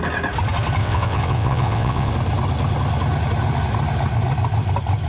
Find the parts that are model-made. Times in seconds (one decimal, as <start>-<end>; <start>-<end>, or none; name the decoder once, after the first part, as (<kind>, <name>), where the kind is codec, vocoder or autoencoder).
0.8-2.1 (vocoder, WaveNeXt)